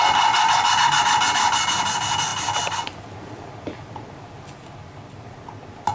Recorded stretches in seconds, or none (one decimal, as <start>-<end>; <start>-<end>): 0.0-5.9